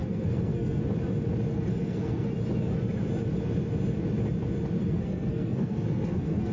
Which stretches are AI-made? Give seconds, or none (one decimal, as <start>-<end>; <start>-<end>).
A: 0.0-0.8; 1.5-2.3; 4.8-6.5